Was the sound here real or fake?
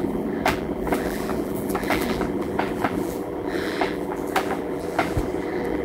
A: fake